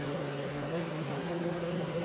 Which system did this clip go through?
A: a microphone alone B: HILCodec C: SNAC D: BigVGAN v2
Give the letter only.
C